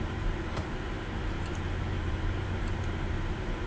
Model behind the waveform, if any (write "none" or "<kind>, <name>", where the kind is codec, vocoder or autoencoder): vocoder, BigVGAN v2